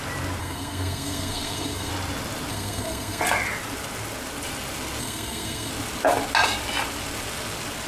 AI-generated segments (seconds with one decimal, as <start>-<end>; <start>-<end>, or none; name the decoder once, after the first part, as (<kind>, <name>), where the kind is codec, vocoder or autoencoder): 0.4-1.9 (codec, SNAC); 2.5-3.2; 5.0-5.7